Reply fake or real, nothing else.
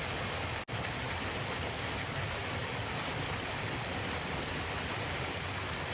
real